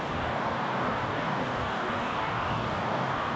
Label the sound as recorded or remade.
remade